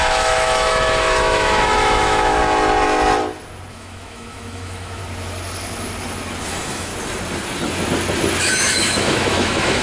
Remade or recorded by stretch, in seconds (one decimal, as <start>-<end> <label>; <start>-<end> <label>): 0.0-2.4 remade; 2.4-3.7 recorded; 3.7-5.0 remade; 5.0-6.5 recorded; 6.5-6.9 remade; 6.9-8.4 recorded; 8.4-9.8 remade